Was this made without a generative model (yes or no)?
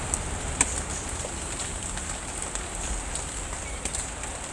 yes